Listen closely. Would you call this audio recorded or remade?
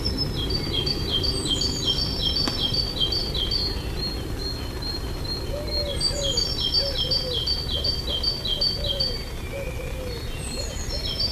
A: recorded